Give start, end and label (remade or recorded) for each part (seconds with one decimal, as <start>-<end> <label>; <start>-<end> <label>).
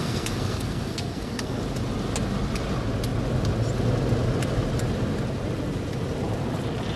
0.0-1.6 remade; 1.6-7.0 recorded